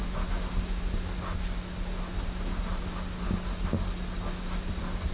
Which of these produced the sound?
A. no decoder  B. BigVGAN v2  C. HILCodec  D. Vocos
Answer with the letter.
A